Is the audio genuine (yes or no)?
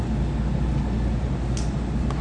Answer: yes